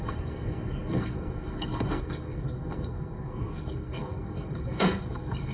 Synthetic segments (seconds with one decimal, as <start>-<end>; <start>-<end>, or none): 0.0-5.5